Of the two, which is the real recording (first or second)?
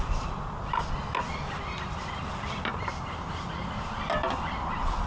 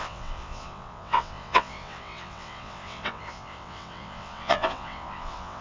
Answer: first